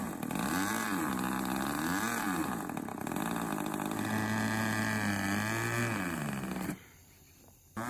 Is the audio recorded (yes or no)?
yes